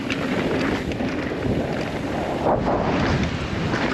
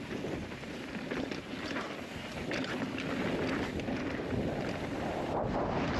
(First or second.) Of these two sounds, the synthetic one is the first